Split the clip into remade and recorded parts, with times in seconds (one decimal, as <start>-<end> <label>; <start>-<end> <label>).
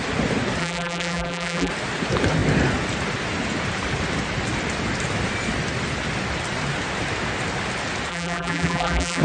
0.0-0.6 recorded; 0.6-1.7 remade; 1.7-8.1 recorded; 8.1-9.2 remade